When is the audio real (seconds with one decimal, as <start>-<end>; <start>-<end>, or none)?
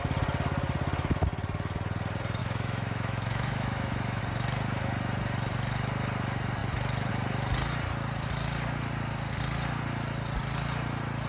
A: 0.0-2.4; 4.2-11.3